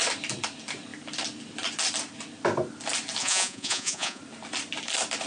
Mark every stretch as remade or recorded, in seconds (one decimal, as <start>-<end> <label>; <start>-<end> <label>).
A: 0.0-3.2 recorded; 3.2-4.2 remade; 4.2-5.3 recorded